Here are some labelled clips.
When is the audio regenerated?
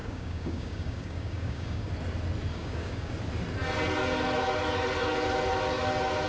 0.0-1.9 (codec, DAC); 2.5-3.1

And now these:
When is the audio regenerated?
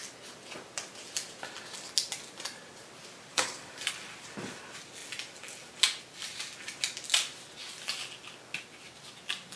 3.3-3.9 (codec, DAC)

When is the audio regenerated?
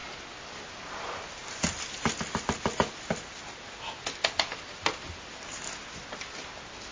none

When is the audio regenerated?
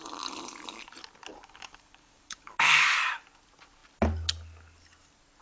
1.3-2.6 (codec, DAC)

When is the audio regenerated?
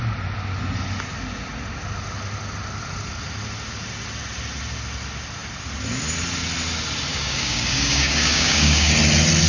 7.1-8.9 (codec, DAC)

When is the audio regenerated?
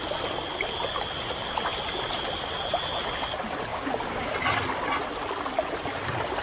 3.7-4.3 (codec, DAC)